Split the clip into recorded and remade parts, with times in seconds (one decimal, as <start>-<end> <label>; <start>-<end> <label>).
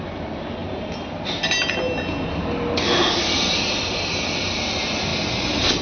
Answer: 0.0-5.8 recorded